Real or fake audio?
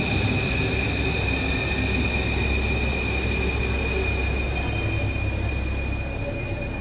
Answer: real